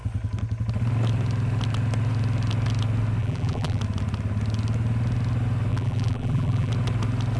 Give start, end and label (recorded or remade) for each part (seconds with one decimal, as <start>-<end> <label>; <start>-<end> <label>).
0.0-3.2 recorded; 3.2-3.8 remade; 3.8-5.7 recorded; 5.7-6.7 remade; 6.7-7.4 recorded